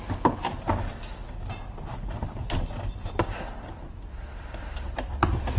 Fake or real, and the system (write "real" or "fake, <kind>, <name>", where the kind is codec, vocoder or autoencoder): real